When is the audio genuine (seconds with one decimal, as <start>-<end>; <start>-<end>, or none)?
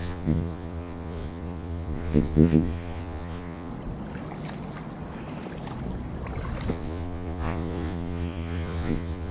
3.7-6.7